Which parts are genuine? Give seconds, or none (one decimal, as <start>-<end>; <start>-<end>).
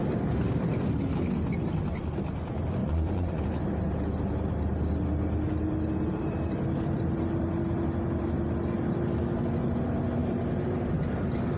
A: 0.0-2.8; 3.4-11.6